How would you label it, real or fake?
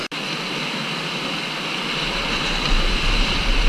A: real